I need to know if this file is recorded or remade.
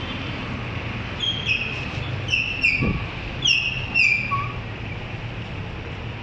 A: recorded